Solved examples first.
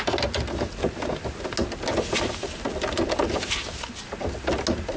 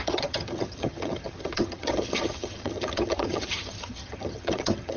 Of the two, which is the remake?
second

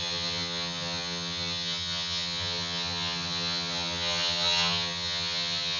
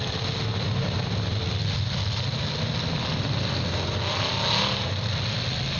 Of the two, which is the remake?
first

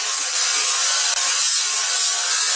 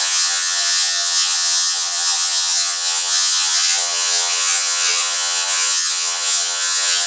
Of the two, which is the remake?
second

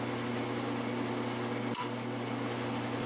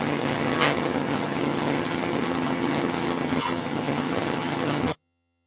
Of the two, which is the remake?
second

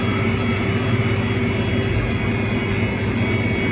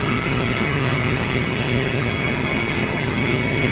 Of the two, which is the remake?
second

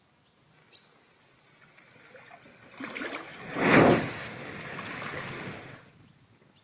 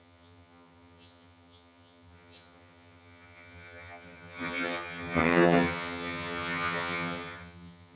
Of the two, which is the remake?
second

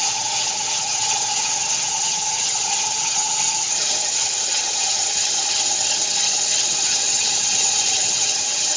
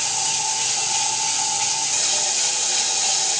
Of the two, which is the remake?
first